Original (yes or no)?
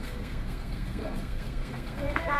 no